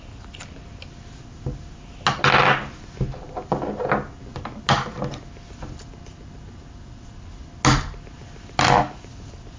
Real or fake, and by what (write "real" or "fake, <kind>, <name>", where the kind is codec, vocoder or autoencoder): real